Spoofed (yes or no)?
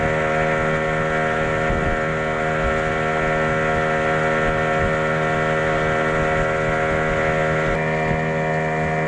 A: no